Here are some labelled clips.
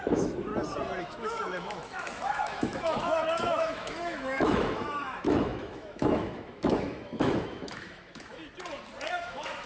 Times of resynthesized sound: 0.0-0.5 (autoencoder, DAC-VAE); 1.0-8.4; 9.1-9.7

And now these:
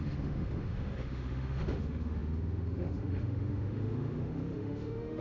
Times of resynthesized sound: 0.0-5.2 (autoencoder, DAC-VAE)

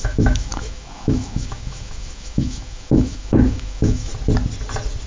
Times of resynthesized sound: 0.0-4.1 (autoencoder, DAC-VAE)

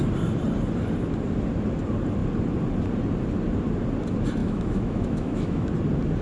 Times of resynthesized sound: 4.4-5.7 (autoencoder, DAC-VAE)